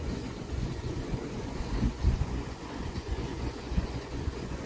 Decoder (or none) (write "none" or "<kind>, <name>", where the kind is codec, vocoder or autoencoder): vocoder, Vocos